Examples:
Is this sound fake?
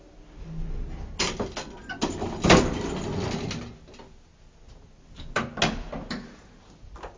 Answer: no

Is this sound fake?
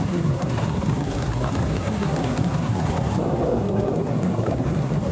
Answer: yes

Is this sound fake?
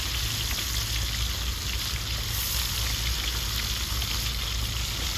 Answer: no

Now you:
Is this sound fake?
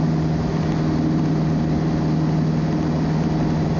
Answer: no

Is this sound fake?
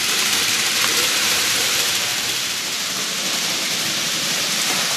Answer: yes